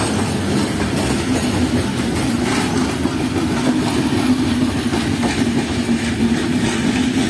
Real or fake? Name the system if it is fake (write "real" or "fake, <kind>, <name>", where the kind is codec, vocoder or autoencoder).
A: real